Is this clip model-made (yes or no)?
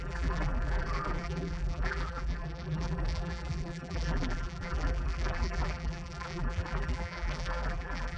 yes